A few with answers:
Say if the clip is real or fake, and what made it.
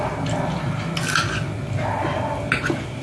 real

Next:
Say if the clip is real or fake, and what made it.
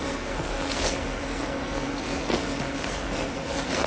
fake, codec, SNAC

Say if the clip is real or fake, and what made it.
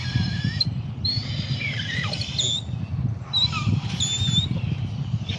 real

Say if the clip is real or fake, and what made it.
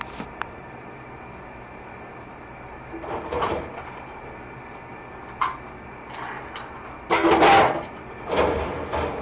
real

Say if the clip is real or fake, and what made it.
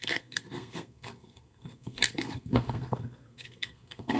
fake, codec, SNAC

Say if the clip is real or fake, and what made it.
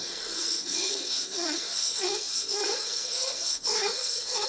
fake, codec, SNAC